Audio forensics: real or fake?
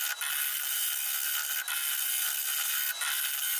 real